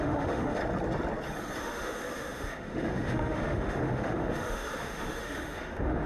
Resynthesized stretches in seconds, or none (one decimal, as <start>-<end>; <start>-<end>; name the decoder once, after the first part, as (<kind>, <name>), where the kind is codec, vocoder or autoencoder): 0.0-0.6 (autoencoder, DAC-VAE); 1.6-6.1